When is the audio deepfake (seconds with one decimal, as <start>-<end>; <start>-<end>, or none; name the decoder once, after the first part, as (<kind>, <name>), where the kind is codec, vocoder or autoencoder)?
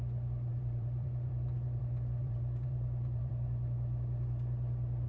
0.5-1.8 (vocoder, BigVGAN v2); 2.2-3.3